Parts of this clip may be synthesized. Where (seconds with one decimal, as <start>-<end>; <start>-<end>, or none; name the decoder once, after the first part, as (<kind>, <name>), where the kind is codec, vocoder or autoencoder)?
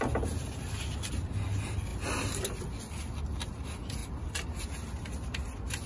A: none